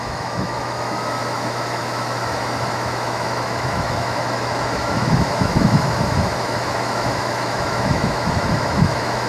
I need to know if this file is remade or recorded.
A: remade